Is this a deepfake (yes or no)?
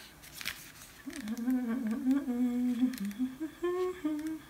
no